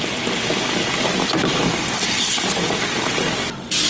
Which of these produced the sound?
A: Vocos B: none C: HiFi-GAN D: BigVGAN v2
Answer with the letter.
B